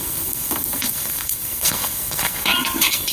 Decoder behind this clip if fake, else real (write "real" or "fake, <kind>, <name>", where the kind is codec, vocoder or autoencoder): fake, codec, SNAC